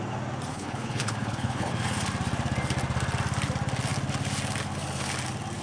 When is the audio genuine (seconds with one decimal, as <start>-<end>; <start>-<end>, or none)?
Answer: 0.0-0.5; 1.7-5.6